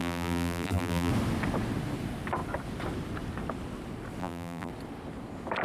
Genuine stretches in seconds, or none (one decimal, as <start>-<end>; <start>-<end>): 1.1-4.2; 4.7-5.6